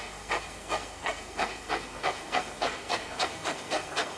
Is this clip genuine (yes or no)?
no